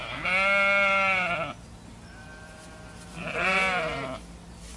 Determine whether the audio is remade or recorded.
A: recorded